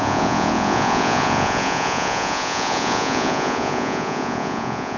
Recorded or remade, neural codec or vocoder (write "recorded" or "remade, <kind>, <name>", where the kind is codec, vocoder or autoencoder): remade, vocoder, Vocos